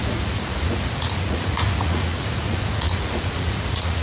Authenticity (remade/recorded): remade